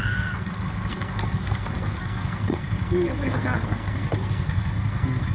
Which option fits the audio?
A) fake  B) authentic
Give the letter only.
A